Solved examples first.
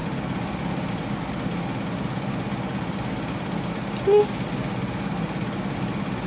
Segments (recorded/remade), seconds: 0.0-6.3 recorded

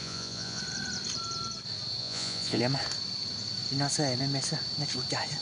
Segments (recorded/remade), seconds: 0.0-0.6 remade; 0.6-2.0 recorded; 2.0-2.6 remade; 2.6-5.4 recorded